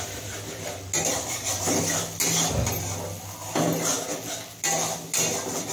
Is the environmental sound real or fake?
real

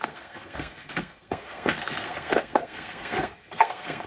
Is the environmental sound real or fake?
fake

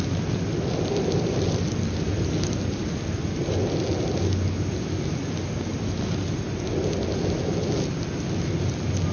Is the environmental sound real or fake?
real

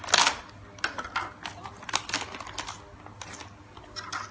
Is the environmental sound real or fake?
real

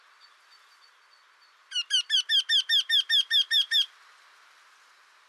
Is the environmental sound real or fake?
real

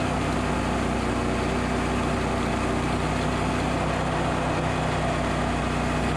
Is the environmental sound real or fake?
real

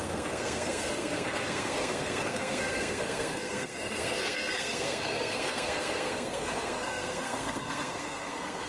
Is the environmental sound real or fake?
fake